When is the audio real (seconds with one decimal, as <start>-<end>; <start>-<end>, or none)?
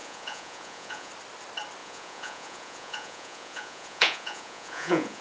1.1-1.8